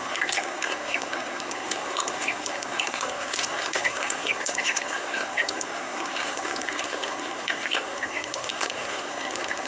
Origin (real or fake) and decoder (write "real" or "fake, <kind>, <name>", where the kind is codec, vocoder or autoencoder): fake, codec, SNAC